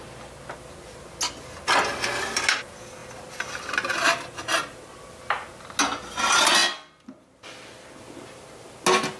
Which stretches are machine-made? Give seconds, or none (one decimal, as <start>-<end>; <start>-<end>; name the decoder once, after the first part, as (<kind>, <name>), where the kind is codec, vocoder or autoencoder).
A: none